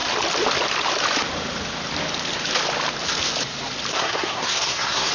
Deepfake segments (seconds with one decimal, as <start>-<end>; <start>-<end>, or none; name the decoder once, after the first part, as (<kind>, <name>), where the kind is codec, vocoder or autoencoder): 3.9-5.1 (codec, SNAC)

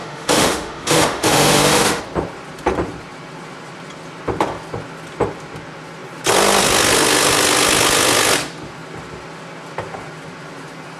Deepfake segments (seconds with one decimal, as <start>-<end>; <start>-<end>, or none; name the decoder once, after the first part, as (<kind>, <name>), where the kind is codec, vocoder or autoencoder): 0.0-2.0 (autoencoder, DAC-VAE)

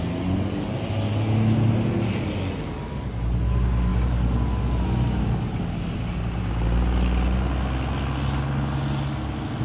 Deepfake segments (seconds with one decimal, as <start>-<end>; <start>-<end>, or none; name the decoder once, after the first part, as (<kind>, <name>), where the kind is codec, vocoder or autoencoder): none

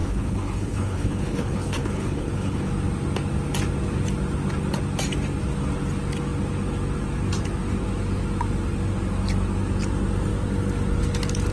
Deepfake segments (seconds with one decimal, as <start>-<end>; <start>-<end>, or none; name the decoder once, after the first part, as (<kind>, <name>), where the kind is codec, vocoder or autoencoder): 0.0-2.7 (codec, HILCodec)

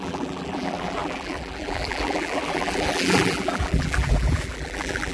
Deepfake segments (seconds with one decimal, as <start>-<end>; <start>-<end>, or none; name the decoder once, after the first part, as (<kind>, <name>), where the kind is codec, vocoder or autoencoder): 0.0-5.1 (vocoder, BigVGAN v2)